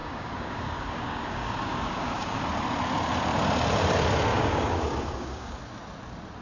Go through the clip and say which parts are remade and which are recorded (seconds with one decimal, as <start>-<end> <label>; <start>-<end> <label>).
0.0-2.4 remade; 2.4-4.3 recorded; 4.3-5.6 remade; 5.6-6.4 recorded